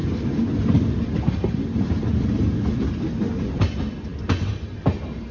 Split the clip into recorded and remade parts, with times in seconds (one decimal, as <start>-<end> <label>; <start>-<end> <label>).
0.0-5.3 recorded